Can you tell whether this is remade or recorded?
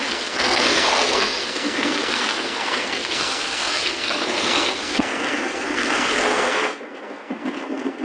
remade